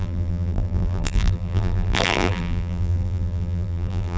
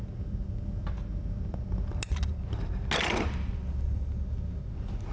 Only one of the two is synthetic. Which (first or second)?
first